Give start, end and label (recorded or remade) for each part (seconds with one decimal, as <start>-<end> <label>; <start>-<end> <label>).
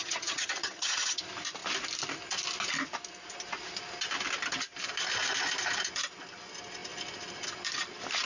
0.0-1.2 remade; 1.2-8.3 recorded